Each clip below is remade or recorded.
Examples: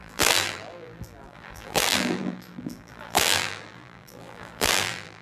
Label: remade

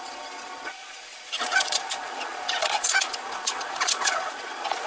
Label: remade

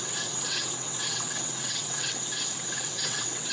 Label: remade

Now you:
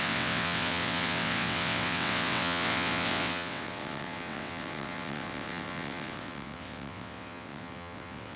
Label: remade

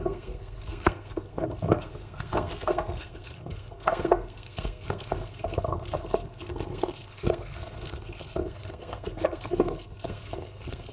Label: remade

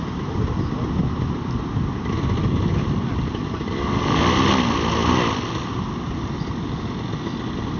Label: recorded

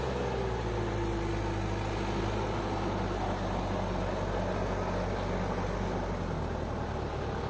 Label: recorded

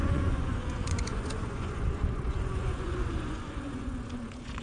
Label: remade